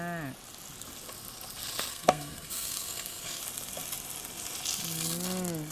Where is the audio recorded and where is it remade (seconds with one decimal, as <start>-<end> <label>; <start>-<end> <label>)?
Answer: 0.0-1.9 recorded; 1.9-3.4 remade; 3.4-5.7 recorded